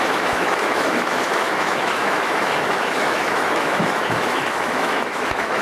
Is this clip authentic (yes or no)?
no